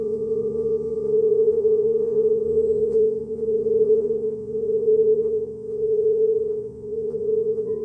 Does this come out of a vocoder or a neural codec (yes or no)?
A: yes